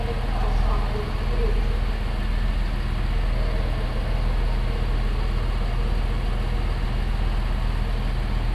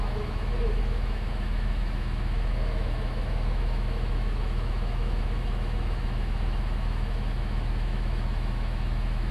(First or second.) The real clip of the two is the first